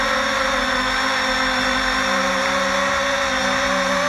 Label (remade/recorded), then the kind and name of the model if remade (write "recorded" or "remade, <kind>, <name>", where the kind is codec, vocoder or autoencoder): recorded